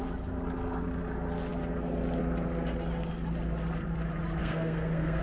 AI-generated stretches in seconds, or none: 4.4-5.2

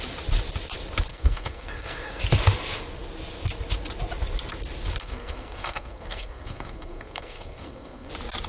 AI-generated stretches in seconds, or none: 1.1-2.2; 5.0-8.1

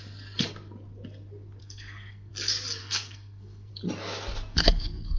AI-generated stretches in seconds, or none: 1.6-2.3; 2.8-3.7; 4.5-5.2

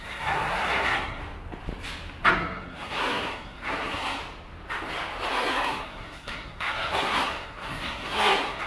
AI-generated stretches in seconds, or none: 0.0-1.2; 2.3-4.2; 5.3-8.7

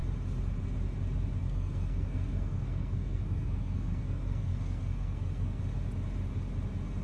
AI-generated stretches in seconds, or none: 1.4-5.6